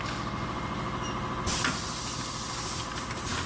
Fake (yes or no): no